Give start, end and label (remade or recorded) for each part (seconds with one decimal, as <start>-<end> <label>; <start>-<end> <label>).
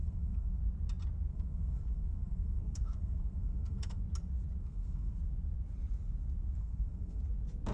0.0-0.6 remade; 0.6-1.3 recorded; 1.3-4.0 remade; 4.0-4.6 recorded; 4.6-5.2 remade; 5.2-6.6 recorded; 6.6-7.2 remade; 7.2-7.7 recorded